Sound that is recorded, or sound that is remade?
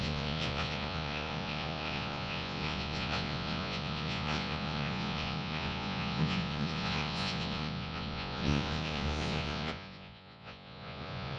remade